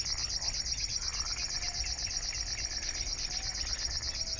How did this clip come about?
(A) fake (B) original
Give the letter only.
B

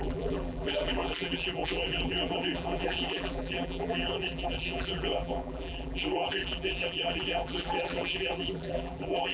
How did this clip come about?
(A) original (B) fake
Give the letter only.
B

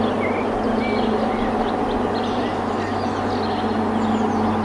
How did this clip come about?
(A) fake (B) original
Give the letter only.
B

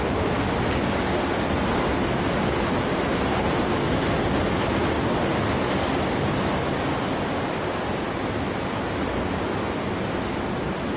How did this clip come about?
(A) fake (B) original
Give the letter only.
B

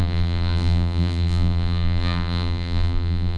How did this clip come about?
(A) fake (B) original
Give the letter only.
A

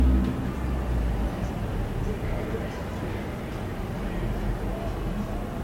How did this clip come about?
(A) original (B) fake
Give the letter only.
A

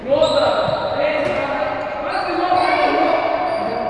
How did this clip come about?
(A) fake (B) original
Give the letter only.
B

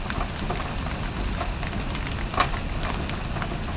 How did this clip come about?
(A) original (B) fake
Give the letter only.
A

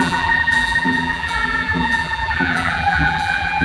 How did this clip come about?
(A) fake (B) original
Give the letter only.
A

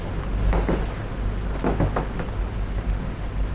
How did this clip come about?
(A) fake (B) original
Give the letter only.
B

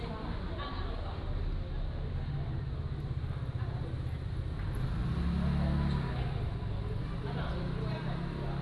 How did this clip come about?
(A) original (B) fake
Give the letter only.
A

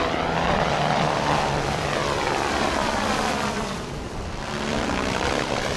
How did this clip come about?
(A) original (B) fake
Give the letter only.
B